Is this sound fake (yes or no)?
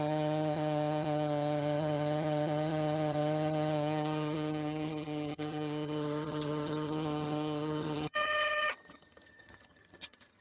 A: yes